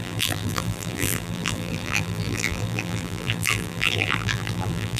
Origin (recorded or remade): remade